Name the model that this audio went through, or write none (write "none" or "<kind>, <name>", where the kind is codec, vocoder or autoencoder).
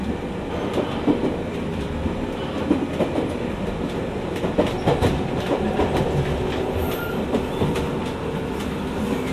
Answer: none